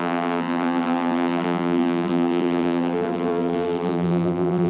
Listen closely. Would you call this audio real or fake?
fake